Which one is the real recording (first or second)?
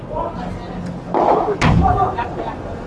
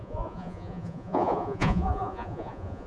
first